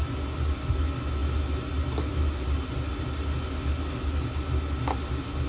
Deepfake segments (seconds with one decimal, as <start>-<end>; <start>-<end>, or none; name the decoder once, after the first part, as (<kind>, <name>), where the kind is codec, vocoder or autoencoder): none

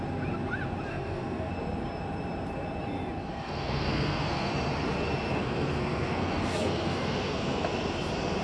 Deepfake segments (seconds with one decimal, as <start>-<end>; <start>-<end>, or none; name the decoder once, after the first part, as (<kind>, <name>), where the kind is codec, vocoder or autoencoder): 0.9-1.5 (codec, SNAC); 3.3-4.5; 5.3-7.8

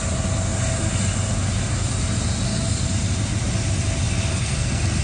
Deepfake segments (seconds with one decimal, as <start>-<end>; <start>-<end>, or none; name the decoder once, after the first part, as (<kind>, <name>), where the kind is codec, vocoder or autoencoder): 4.3-5.0 (codec, SNAC)

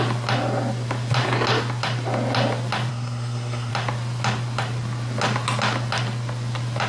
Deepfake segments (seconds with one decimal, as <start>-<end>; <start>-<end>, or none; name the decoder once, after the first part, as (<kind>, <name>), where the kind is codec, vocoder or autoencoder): 2.9-3.7 (codec, SNAC)

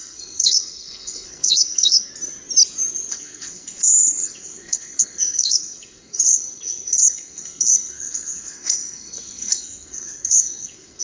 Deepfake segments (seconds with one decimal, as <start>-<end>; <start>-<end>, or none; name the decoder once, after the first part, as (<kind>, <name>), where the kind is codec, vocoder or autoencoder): 0.0-2.1 (codec, SNAC); 3.1-11.0

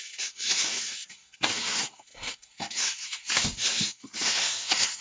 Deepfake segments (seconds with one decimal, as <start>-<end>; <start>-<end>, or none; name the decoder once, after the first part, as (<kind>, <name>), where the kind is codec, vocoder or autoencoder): 0.0-5.0 (codec, SNAC)